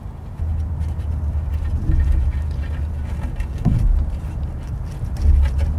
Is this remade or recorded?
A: recorded